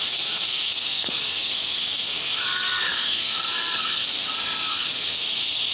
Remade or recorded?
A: remade